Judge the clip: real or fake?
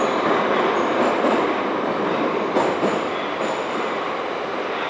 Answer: fake